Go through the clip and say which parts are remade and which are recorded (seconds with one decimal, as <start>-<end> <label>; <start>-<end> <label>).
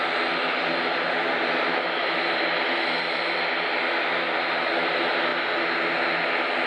0.0-6.7 recorded